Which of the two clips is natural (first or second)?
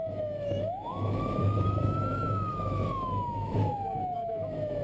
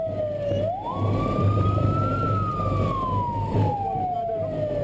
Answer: second